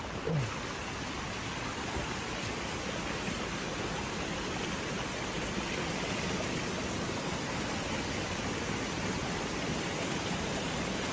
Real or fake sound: real